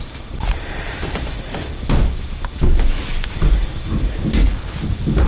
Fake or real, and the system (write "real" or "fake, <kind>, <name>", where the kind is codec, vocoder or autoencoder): real